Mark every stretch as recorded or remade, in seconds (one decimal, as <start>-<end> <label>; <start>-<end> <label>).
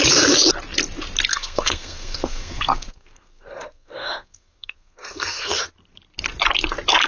0.0-1.3 recorded; 1.3-5.6 remade; 5.6-7.1 recorded